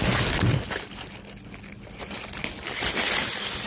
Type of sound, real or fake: real